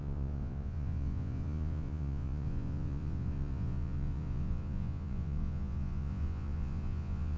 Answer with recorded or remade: remade